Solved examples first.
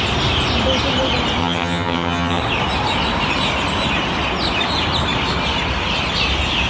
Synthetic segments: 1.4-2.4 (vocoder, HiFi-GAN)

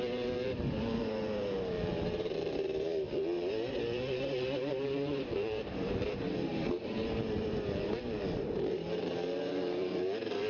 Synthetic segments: 0.0-10.5 (vocoder, BigVGAN v2)